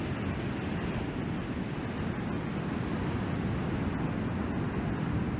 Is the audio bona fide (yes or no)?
yes